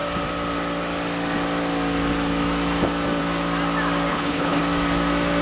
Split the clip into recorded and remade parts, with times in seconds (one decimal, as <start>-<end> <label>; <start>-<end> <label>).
0.0-4.1 recorded; 4.1-4.6 remade; 4.6-5.4 recorded